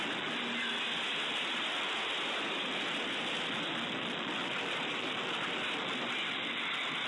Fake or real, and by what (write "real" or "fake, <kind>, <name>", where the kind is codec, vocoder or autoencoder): real